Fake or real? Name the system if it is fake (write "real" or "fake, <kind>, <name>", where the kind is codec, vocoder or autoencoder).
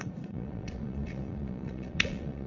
fake, vocoder, Vocos